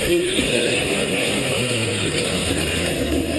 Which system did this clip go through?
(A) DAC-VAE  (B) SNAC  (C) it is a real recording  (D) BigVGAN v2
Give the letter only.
B